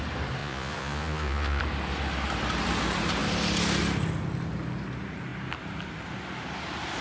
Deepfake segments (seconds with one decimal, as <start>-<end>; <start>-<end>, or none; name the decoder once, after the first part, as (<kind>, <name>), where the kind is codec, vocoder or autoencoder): 0.4-1.6 (vocoder, Vocos)